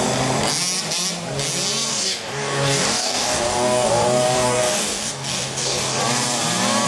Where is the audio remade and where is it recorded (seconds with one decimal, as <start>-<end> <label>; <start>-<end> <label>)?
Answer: 0.0-1.9 recorded; 1.9-6.0 remade; 6.0-6.9 recorded